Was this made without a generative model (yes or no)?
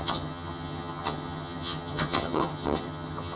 no